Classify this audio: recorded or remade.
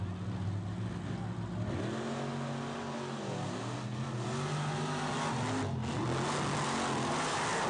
recorded